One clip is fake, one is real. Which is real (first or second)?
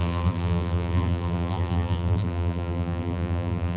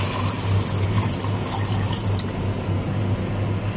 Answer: second